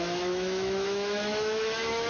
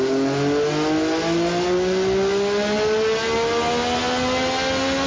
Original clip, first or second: second